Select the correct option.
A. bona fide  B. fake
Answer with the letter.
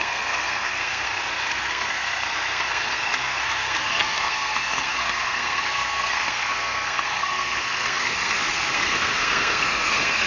B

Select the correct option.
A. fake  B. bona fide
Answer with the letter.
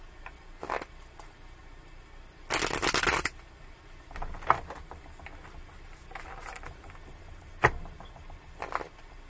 B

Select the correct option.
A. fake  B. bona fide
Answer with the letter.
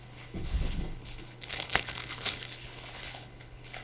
A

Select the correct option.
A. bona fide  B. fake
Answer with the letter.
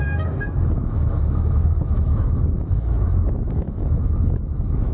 B